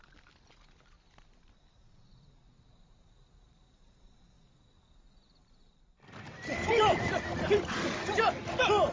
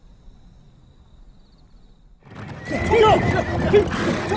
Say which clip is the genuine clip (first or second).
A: second